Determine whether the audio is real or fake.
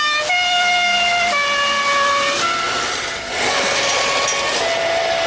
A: real